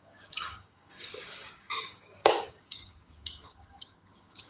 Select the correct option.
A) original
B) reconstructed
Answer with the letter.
B